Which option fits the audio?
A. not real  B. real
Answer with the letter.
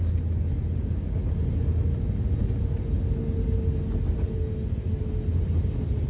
B